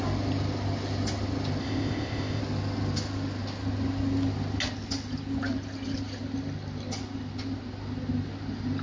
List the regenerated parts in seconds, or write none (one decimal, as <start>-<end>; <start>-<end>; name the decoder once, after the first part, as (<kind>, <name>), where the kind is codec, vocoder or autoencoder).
1.6-2.4 (codec, ZipCodec)